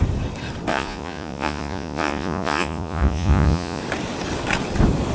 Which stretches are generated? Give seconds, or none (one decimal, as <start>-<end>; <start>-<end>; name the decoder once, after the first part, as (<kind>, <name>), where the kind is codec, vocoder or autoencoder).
0.7-3.8 (vocoder, Vocos)